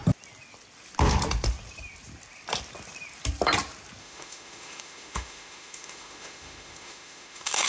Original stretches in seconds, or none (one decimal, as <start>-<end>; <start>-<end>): 0.0-4.0